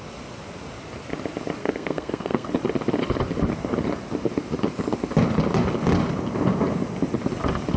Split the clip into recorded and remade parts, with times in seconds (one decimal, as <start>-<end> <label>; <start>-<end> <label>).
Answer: 0.0-1.6 recorded; 1.6-2.5 remade; 2.5-7.8 recorded